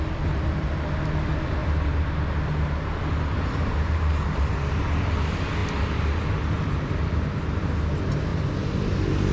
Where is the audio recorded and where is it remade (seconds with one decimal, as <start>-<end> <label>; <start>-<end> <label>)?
0.0-1.6 recorded; 1.6-4.9 remade; 4.9-9.3 recorded